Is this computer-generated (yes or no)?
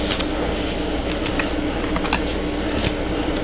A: no